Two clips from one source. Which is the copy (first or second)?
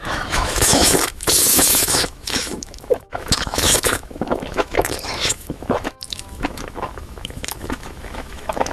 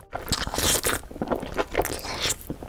first